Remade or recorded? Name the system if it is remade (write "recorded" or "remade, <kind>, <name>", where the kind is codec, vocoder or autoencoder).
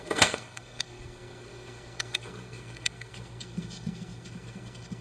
remade, codec, SNAC